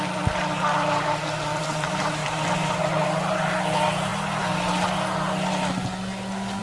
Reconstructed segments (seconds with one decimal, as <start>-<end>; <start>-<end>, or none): none